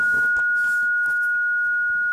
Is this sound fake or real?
real